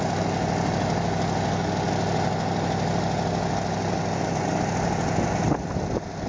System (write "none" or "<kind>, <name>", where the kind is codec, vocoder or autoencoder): none